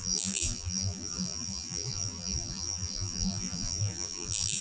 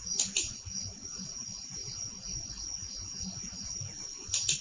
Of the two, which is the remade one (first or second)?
first